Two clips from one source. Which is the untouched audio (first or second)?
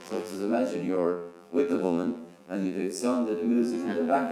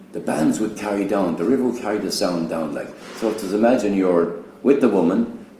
second